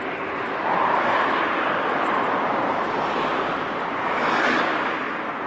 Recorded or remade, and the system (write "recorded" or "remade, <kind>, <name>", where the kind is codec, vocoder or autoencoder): recorded